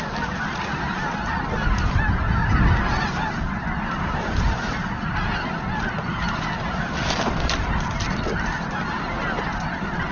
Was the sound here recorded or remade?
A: recorded